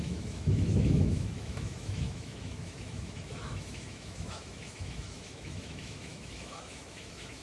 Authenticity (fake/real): fake